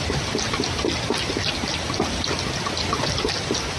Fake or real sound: real